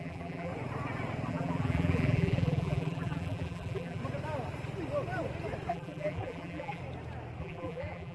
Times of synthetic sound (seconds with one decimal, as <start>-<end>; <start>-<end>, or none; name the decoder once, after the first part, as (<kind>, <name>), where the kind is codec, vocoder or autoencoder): 0.0-0.5 (vocoder, BigVGAN v2); 1.3-4.0; 5.7-6.8; 7.4-8.1